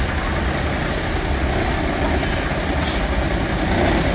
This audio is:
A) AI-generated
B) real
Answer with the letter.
B